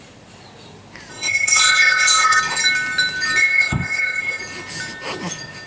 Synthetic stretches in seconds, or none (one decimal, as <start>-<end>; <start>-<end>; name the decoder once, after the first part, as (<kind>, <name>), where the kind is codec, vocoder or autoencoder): 1.1-2.4 (codec, ZipCodec); 3.4-4.4